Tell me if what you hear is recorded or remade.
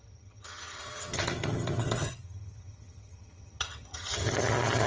remade